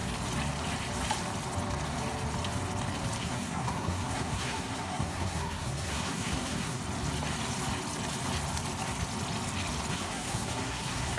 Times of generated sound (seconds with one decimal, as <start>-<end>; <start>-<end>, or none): 3.2-6.8; 9.9-11.2